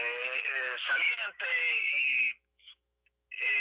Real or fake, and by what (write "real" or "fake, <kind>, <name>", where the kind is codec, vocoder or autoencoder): fake, autoencoder, DAC-VAE